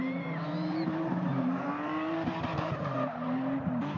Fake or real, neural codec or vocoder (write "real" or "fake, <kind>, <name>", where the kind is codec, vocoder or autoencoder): fake, vocoder, BigVGAN v2